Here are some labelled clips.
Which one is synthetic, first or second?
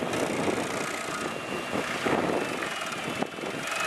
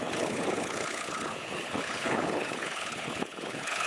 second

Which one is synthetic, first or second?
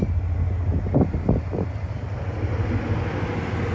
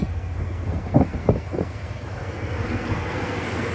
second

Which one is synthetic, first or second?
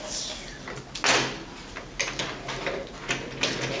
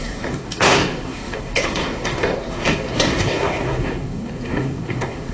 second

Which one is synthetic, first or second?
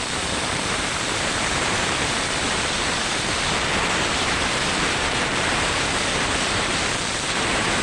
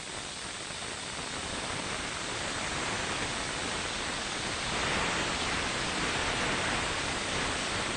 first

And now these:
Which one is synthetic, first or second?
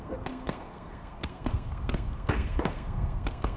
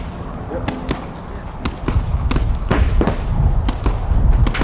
first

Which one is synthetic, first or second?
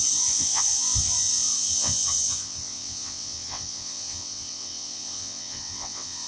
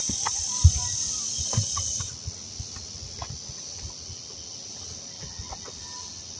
first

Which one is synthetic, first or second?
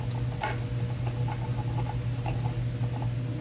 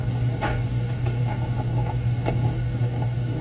second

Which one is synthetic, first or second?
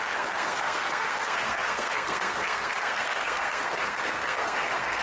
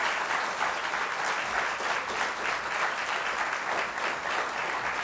first